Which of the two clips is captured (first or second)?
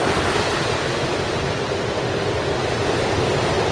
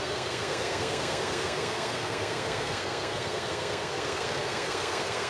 first